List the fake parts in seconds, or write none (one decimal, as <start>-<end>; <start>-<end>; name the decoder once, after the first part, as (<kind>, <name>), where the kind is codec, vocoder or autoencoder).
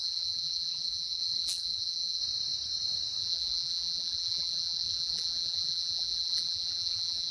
0.0-2.2 (vocoder, BigVGAN v2); 3.2-7.3